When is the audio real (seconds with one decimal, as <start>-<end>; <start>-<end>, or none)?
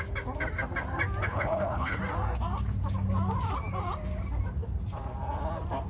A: 0.0-1.3; 2.0-5.9